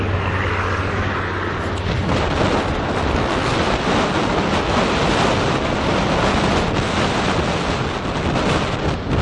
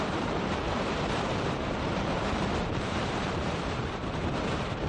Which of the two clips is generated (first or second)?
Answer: second